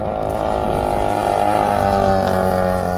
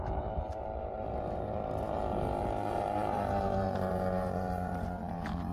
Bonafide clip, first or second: first